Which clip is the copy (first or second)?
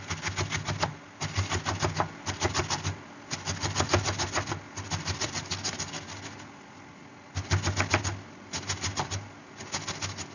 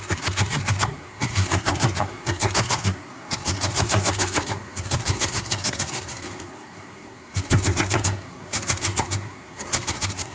second